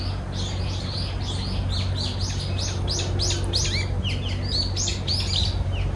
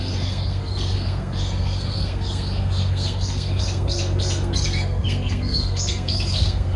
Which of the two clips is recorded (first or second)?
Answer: first